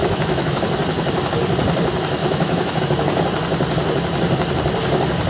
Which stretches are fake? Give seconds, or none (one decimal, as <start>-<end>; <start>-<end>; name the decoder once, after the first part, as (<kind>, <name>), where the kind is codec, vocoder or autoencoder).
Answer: 0.0-0.6 (autoencoder, DAC-VAE); 2.2-2.8

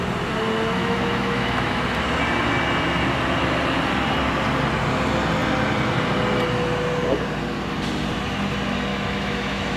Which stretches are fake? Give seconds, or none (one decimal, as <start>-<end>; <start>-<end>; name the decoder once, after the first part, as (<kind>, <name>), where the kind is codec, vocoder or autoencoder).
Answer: 0.8-1.8 (autoencoder, DAC-VAE); 8.9-9.8

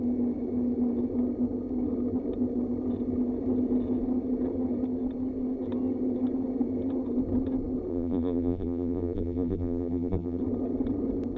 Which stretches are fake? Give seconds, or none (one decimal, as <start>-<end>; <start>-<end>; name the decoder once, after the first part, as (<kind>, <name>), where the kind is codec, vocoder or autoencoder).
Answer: 7.9-10.4 (vocoder, BigVGAN v2)

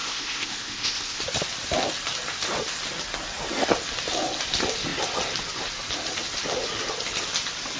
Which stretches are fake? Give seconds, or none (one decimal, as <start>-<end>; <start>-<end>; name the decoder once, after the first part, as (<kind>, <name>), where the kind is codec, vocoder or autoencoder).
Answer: 0.0-1.2 (codec, ZipCodec)